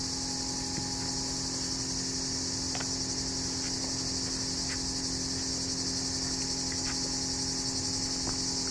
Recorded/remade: recorded